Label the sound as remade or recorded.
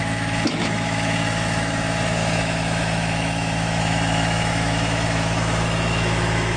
remade